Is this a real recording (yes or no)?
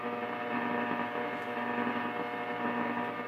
yes